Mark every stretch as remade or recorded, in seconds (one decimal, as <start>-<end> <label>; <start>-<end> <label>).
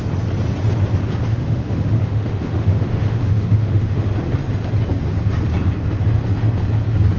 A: 0.0-1.3 recorded; 1.3-4.0 remade; 4.0-7.2 recorded